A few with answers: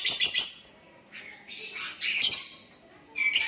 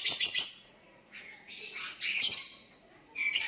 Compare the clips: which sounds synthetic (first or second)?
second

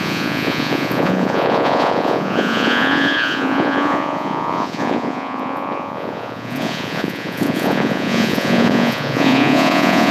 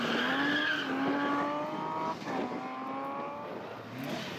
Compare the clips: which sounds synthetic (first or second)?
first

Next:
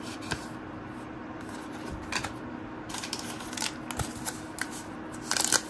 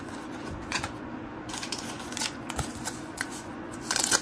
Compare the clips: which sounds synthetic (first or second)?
second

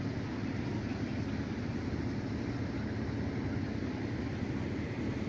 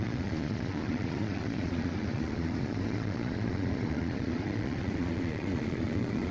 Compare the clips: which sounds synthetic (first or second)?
second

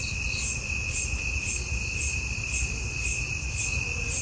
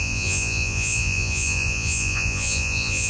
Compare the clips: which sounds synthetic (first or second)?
second